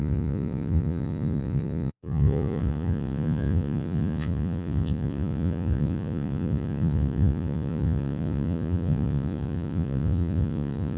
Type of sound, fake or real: fake